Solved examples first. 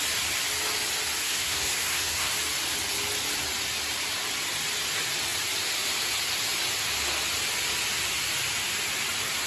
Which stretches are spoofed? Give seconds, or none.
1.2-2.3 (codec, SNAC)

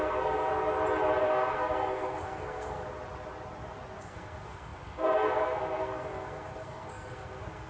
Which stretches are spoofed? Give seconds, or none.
0.0-0.5 (codec, SNAC); 1.2-2.8; 4.0-7.7

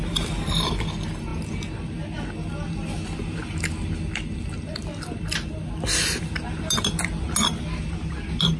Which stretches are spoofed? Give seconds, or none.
none

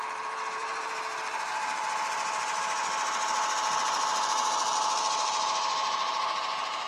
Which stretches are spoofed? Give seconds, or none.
0.0-6.9 (vocoder, BigVGAN v2)